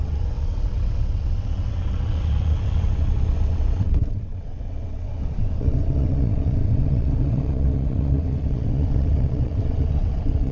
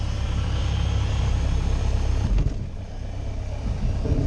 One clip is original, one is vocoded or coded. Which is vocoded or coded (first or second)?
first